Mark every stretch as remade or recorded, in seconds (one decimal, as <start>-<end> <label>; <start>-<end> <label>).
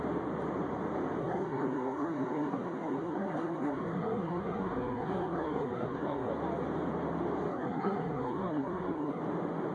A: 0.0-1.2 recorded; 1.2-6.3 remade; 6.3-7.5 recorded; 7.5-9.2 remade; 9.2-9.7 recorded